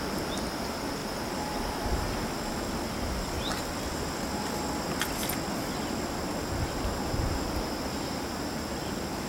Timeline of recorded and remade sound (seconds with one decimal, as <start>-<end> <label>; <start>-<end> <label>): 0.0-9.3 recorded